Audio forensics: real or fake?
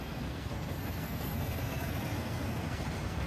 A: fake